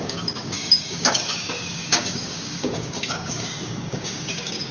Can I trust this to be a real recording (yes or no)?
no